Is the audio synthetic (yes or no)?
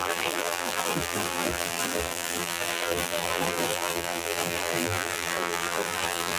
yes